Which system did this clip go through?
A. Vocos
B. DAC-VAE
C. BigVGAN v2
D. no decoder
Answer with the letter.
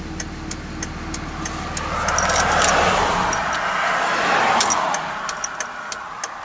D